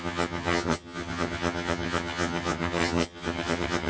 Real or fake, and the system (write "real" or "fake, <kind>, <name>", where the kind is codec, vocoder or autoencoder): fake, vocoder, HiFi-GAN